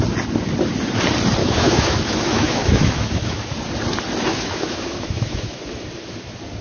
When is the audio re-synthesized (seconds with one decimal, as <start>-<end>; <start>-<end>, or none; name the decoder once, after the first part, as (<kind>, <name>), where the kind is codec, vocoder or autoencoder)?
1.4-3.4 (autoencoder, DAC-VAE); 4.3-5.6